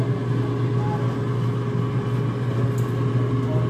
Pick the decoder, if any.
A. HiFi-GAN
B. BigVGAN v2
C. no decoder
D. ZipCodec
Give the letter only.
C